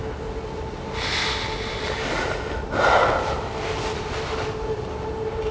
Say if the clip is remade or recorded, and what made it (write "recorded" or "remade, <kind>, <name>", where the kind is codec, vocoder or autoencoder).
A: recorded